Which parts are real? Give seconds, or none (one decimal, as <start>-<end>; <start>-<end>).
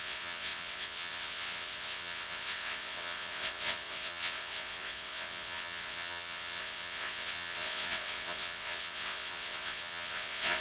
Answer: none